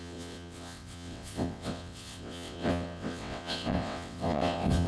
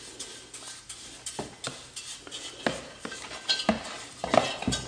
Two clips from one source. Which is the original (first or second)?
second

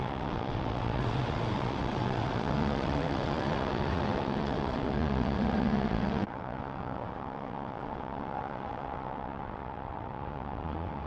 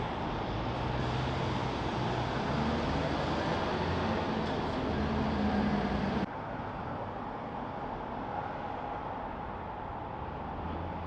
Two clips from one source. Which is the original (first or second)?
second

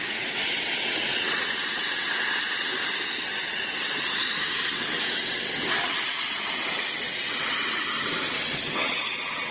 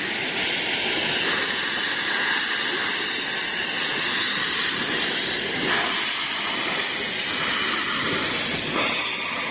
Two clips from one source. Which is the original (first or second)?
second